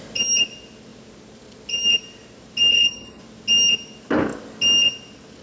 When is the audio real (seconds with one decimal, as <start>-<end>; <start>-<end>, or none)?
0.0-2.7; 3.2-5.4